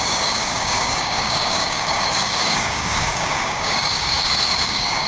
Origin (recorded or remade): remade